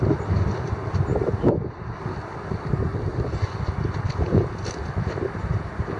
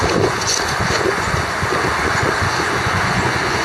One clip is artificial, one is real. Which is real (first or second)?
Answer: first